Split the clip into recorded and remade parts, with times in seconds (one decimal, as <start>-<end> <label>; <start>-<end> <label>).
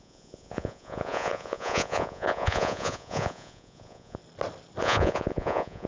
0.0-4.2 remade; 4.2-4.8 recorded; 4.8-5.9 remade